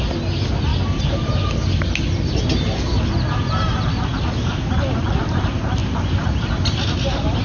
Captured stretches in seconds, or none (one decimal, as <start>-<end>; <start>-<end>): 0.0-5.8; 6.5-7.4